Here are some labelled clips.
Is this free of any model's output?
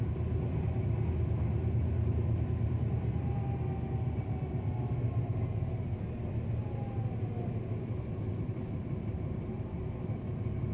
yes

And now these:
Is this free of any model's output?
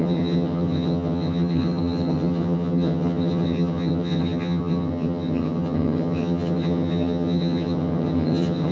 no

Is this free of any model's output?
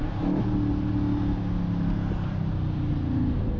yes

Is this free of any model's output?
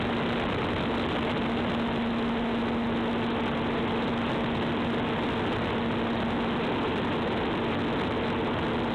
yes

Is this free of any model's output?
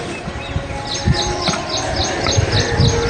yes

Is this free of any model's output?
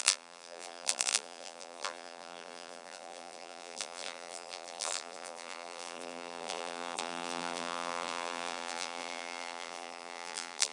no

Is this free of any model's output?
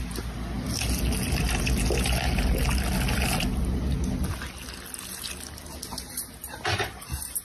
yes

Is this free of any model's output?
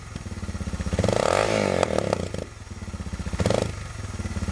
yes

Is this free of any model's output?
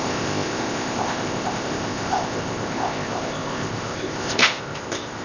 no